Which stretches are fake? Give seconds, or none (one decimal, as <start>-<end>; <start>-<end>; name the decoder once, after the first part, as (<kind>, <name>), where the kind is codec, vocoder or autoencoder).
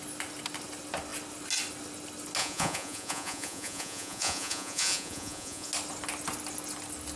2.4-5.7 (vocoder, Vocos)